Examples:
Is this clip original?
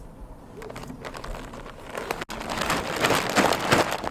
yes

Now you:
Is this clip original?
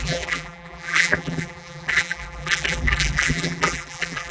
no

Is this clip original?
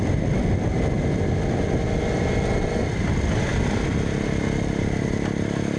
yes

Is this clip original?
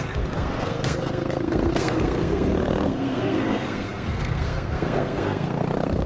no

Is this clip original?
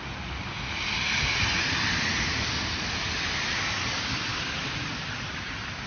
no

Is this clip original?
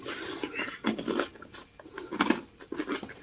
yes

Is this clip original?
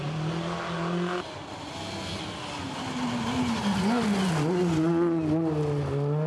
yes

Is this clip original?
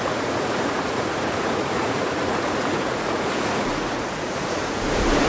no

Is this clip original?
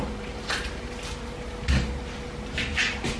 yes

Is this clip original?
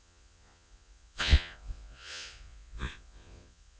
no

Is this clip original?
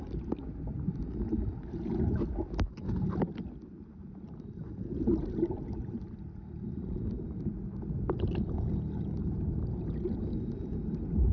yes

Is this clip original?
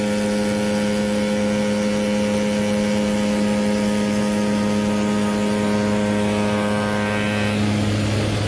yes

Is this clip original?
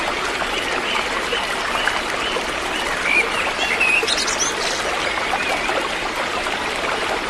yes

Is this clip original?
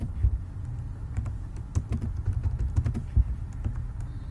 yes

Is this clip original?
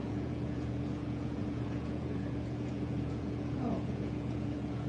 no